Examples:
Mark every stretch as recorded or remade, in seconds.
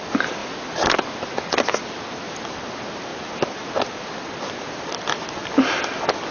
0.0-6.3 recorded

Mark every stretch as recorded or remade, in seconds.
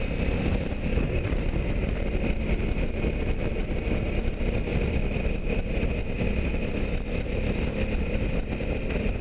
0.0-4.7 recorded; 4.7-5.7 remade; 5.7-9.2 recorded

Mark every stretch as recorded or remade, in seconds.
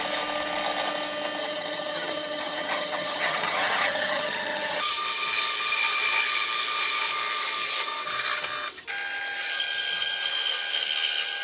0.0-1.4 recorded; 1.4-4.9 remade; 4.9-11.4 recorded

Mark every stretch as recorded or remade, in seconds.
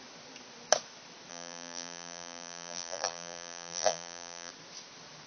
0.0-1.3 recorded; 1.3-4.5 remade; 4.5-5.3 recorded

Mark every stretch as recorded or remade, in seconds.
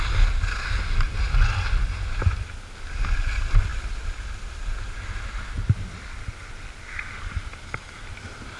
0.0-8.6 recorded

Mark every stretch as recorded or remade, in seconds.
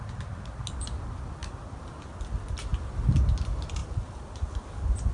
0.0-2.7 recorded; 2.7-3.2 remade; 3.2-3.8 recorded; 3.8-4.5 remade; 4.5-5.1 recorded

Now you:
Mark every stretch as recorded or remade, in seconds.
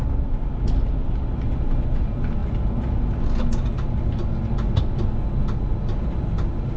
0.0-6.8 recorded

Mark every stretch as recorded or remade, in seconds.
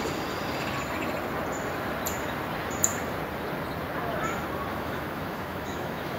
0.0-4.7 recorded; 4.7-6.2 remade